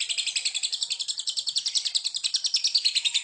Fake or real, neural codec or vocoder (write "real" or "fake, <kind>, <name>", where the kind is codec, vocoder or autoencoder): real